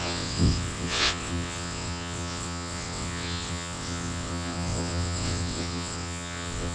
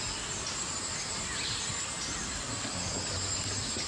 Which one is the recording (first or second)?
second